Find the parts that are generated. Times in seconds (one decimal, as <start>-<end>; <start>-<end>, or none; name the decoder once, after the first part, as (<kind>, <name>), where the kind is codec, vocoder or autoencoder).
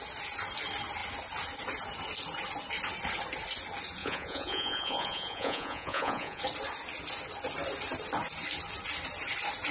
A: 4.0-6.4 (vocoder, Vocos)